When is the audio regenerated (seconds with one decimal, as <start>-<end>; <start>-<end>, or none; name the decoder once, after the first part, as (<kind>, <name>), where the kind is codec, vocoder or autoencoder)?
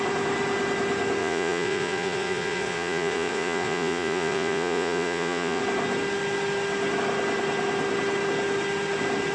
1.2-5.6 (vocoder, Vocos)